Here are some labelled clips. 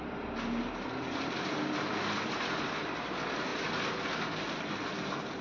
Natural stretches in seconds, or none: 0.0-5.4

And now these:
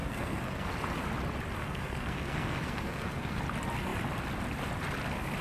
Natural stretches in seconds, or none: 0.7-1.6; 3.4-5.4

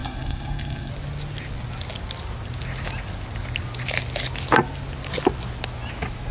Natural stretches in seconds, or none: 0.9-6.3